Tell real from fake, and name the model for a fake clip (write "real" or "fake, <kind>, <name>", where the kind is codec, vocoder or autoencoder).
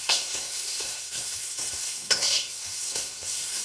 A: fake, codec, SNAC